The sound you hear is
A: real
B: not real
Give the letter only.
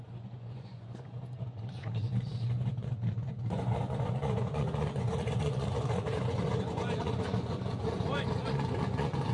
B